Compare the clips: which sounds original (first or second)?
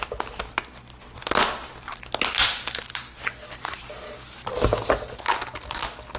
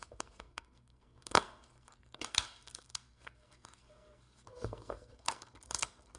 first